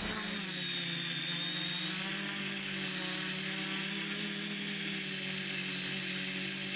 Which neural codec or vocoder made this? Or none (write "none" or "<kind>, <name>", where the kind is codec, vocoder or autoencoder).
none